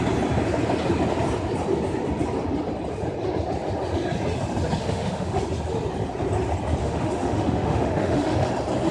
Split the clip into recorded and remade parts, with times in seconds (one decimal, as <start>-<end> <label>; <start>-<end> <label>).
0.0-4.8 recorded; 4.8-5.4 remade; 5.4-6.8 recorded; 6.8-8.5 remade; 8.5-8.9 recorded